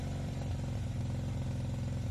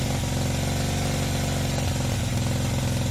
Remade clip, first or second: first